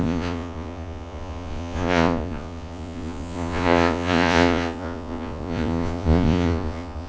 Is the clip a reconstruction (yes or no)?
yes